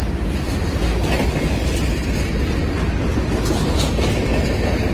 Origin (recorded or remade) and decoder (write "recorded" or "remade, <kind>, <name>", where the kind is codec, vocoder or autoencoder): recorded